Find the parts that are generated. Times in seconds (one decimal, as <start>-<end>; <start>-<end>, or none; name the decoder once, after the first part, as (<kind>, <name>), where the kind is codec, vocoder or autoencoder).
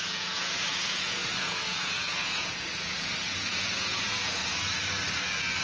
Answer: 0.0-4.4 (vocoder, Vocos)